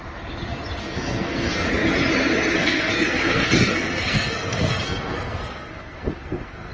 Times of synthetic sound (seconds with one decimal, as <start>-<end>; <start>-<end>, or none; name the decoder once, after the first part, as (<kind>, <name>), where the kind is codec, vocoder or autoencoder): 0.8-1.7 (codec, SNAC); 2.6-6.7